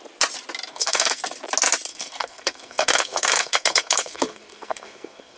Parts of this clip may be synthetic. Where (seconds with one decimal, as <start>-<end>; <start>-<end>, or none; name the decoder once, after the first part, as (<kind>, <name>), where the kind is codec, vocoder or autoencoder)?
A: 0.7-1.2 (codec, SNAC); 1.9-5.4